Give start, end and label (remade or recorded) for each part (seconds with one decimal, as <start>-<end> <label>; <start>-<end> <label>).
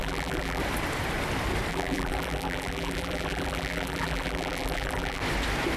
0.0-0.6 remade; 0.6-1.7 recorded; 1.7-5.2 remade; 5.2-5.8 recorded